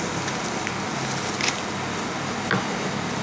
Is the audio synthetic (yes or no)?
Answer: no